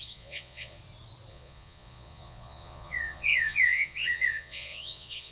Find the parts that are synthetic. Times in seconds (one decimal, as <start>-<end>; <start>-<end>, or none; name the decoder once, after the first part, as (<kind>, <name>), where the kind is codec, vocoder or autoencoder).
0.0-0.8 (vocoder, Vocos); 1.3-5.3